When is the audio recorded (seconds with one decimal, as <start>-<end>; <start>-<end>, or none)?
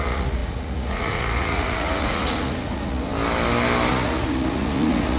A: 3.1-3.9